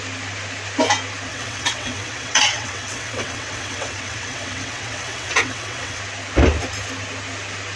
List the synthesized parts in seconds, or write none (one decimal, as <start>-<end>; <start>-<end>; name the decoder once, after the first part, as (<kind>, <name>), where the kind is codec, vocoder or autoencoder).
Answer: 1.3-6.0 (vocoder, WaveNeXt)